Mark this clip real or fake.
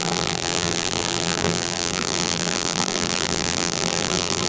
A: fake